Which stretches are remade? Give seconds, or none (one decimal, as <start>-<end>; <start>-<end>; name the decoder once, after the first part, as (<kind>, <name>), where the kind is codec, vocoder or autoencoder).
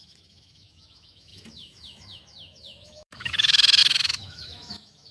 0.0-5.1 (autoencoder, DAC-VAE)